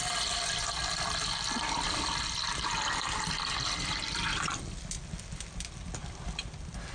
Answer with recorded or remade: recorded